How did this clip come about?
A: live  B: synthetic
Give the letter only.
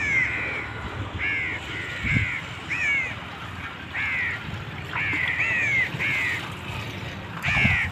A